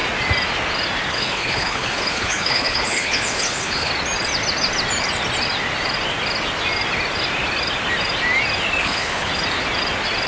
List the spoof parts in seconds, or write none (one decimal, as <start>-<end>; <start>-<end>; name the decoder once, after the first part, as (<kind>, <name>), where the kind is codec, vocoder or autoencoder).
1.1-3.9 (codec, HILCodec); 8.8-9.3